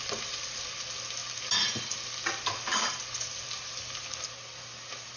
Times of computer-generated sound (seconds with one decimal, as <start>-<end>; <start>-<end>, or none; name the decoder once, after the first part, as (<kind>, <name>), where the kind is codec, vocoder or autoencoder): none